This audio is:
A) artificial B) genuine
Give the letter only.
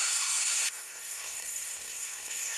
A